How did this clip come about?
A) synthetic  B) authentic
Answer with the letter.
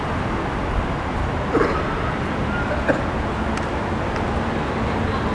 B